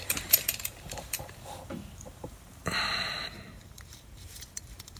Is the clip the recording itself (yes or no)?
no